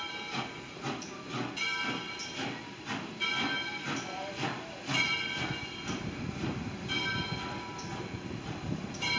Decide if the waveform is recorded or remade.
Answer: recorded